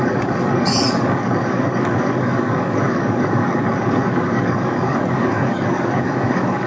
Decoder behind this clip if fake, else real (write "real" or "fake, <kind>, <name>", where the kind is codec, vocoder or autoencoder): fake, codec, DAC